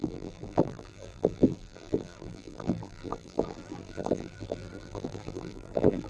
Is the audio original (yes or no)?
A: no